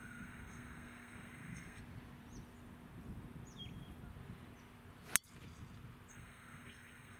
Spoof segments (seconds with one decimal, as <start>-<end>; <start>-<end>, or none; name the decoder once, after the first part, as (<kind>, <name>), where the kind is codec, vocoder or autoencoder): 0.0-1.8 (codec, SNAC); 6.1-7.2